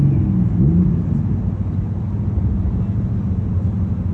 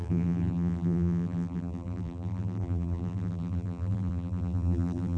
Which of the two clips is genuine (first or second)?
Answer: first